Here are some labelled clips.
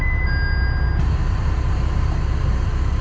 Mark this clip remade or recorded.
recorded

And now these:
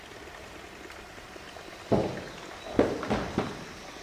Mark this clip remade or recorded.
recorded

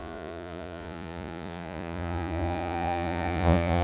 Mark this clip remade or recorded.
remade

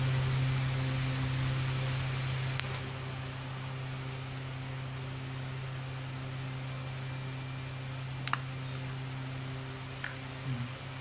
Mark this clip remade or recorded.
recorded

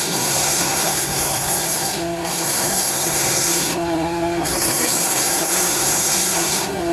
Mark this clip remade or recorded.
remade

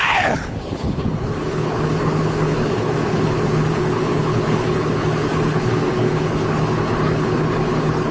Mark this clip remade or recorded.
remade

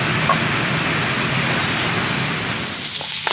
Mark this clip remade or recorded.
recorded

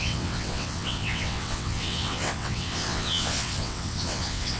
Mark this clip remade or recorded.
remade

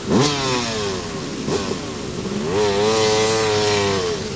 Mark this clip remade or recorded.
recorded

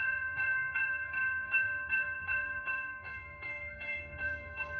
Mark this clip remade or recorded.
remade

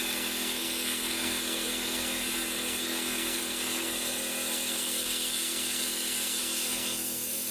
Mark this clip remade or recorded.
remade